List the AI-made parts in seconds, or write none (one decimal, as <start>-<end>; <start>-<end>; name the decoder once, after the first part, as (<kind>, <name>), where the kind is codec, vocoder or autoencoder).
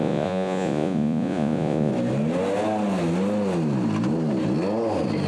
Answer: 0.0-1.9 (vocoder, Vocos)